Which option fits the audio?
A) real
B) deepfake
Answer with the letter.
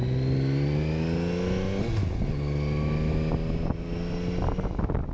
A